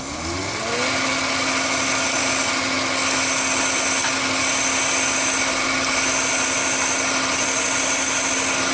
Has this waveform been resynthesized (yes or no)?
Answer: no